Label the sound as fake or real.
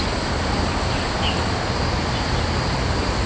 real